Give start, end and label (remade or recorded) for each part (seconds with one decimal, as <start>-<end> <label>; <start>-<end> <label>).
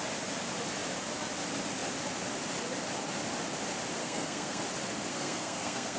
0.0-4.0 recorded; 4.0-4.6 remade; 4.6-5.1 recorded; 5.1-6.0 remade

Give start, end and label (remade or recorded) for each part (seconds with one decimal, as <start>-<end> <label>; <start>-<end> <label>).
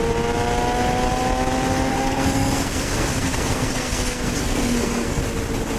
0.0-1.9 recorded; 1.9-5.2 remade; 5.2-5.8 recorded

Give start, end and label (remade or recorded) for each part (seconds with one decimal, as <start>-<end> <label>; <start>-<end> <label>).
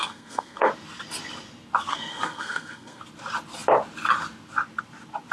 0.0-0.7 remade; 0.7-1.9 recorded; 1.9-3.0 remade; 3.0-5.3 recorded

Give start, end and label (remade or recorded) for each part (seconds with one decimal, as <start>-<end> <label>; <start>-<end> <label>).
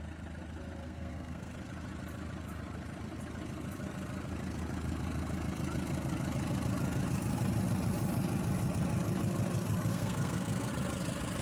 0.0-0.8 recorded; 0.8-1.5 remade; 1.5-9.9 recorded; 9.9-10.7 remade; 10.7-11.4 recorded